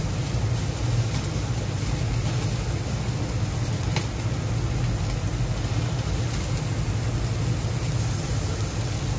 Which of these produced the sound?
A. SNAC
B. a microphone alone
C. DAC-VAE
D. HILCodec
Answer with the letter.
B